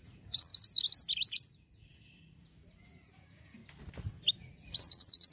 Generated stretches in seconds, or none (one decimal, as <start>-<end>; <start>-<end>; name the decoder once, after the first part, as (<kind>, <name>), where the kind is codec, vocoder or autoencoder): 0.0-0.5 (vocoder, Vocos); 1.3-3.6; 4.3-5.3